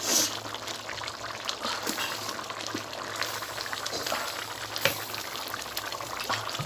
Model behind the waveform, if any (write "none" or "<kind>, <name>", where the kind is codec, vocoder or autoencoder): vocoder, BigVGAN v2